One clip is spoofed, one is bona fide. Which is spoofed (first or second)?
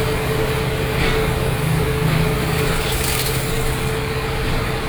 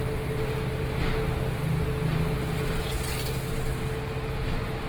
first